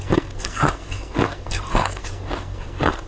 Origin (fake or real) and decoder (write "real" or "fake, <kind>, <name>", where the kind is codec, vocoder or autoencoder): fake, codec, SNAC